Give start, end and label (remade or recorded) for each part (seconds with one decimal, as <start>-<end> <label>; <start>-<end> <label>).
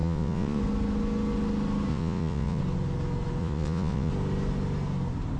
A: 0.0-0.6 remade; 0.6-1.9 recorded; 1.9-2.6 remade; 2.6-3.4 recorded; 3.4-4.1 remade; 4.1-5.4 recorded